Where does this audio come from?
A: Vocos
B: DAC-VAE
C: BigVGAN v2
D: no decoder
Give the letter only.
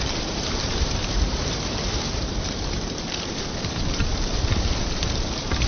C